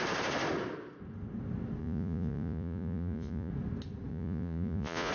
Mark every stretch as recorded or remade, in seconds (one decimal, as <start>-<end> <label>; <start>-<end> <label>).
0.0-1.8 recorded; 1.8-3.5 remade; 3.5-4.1 recorded; 4.1-5.1 remade